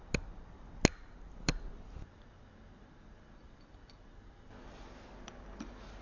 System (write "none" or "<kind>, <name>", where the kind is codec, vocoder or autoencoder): none